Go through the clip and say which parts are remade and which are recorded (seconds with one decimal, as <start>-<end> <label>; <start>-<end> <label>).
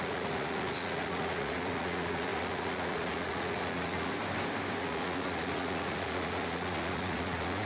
0.0-4.1 remade; 4.1-4.8 recorded; 4.8-7.7 remade